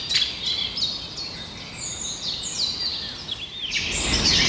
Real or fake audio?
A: real